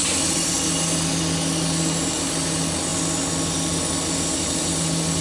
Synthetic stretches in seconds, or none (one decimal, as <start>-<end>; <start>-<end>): none